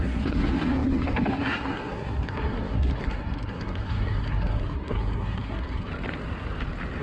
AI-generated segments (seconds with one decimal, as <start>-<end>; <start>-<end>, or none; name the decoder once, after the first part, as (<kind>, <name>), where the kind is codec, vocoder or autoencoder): 0.0-5.9 (codec, SNAC)